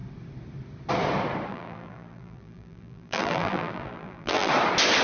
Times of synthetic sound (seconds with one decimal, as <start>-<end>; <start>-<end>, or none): 1.5-4.5